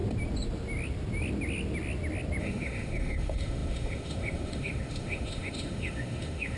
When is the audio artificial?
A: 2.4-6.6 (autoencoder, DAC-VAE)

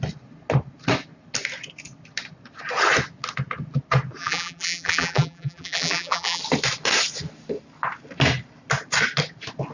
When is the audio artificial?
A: 4.2-6.4 (vocoder, BigVGAN v2)

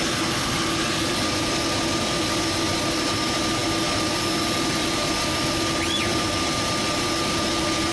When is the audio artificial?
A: none

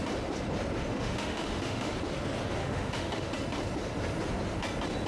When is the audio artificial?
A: 0.9-1.9 (autoencoder, DAC-VAE); 2.6-3.3

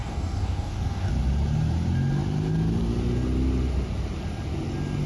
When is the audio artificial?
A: 0.0-1.1 (codec, DAC)

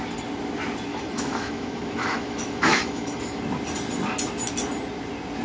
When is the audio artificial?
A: 0.9-3.4 (autoencoder, DAC-VAE)

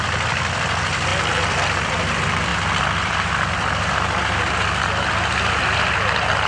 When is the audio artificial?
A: none

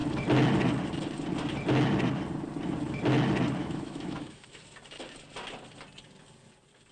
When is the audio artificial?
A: 3.6-4.6 (autoencoder, DAC-VAE)